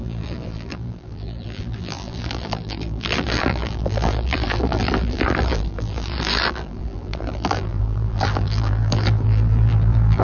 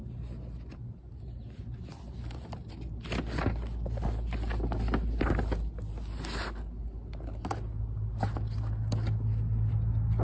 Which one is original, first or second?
second